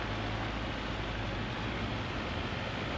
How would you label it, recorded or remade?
recorded